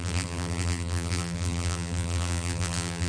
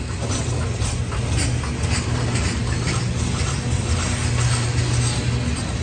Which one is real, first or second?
second